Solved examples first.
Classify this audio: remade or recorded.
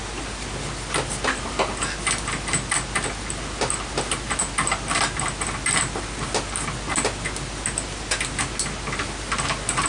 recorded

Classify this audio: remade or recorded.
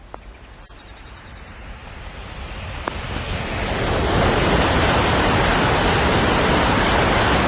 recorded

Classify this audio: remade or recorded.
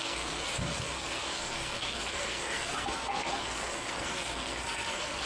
remade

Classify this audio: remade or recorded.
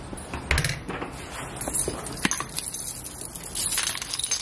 recorded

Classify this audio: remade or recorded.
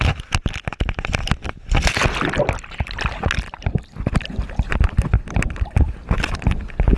recorded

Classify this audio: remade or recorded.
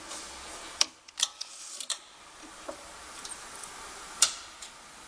remade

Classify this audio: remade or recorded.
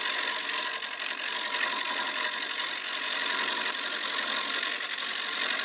recorded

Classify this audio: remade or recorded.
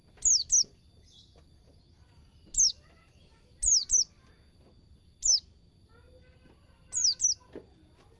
recorded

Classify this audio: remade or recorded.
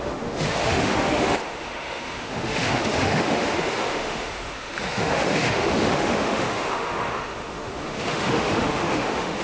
remade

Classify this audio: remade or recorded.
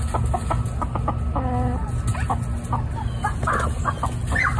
recorded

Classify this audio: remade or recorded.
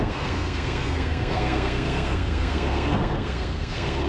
remade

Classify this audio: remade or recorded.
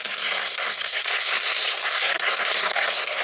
remade